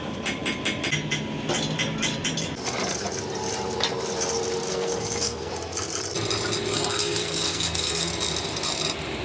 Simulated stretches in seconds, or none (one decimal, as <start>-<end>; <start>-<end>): 4.7-5.5; 6.7-8.1